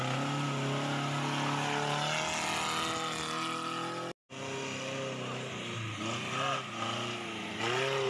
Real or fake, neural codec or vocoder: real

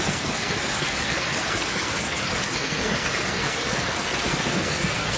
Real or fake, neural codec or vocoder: fake, codec, SNAC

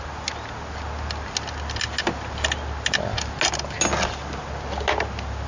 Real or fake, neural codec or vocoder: real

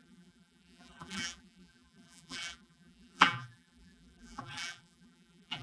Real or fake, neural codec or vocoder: fake, vocoder, BigVGAN v2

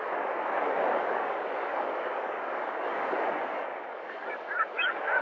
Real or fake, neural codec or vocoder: fake, codec, DAC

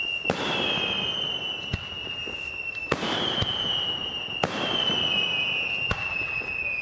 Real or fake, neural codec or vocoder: real